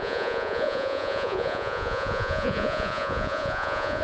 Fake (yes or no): yes